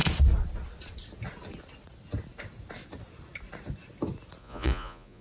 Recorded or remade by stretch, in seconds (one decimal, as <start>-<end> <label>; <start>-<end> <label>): 0.0-4.4 recorded; 4.4-5.2 remade